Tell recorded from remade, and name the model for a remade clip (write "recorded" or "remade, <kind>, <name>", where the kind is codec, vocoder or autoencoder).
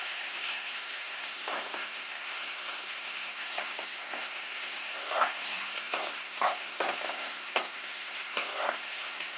remade, codec, SNAC